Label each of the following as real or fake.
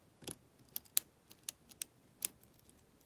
real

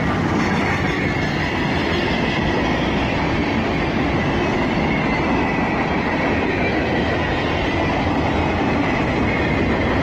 real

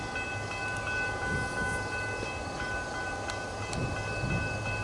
real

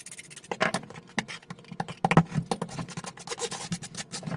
real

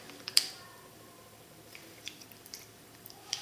fake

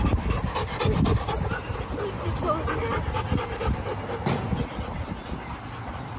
real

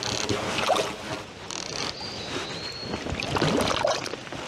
real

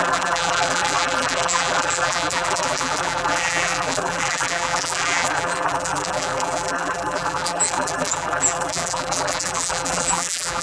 fake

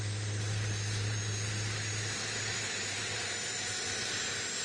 real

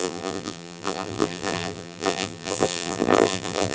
fake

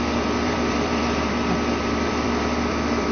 fake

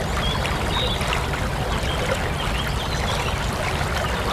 real